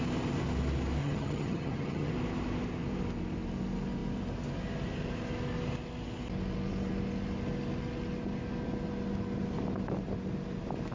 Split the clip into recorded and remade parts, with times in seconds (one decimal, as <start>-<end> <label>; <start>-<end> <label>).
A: 0.0-1.0 recorded; 1.0-2.1 remade; 2.1-10.9 recorded